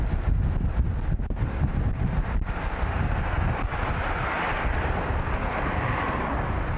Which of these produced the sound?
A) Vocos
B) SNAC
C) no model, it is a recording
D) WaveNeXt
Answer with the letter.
C